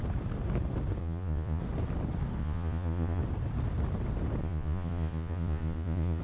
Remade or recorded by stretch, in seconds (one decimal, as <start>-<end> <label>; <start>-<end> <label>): 0.0-1.0 recorded; 1.0-1.6 remade; 1.6-2.4 recorded; 2.4-3.2 remade; 3.2-4.4 recorded; 4.4-6.2 remade